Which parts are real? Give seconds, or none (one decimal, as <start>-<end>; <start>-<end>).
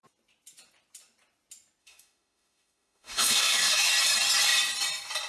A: 0.0-1.8; 3.9-5.3